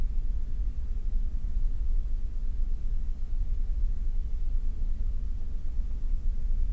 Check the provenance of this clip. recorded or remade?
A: recorded